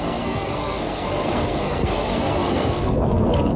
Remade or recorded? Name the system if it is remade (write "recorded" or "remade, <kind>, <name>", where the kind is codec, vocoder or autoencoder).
remade, codec, SNAC